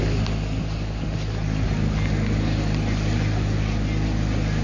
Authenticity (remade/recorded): recorded